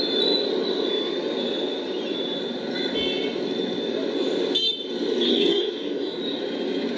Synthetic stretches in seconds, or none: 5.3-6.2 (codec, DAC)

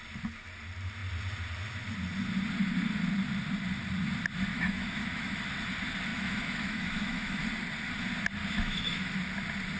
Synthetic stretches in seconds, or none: 4.5-5.4 (autoencoder, DAC-VAE); 6.1-7.4; 8.4-9.1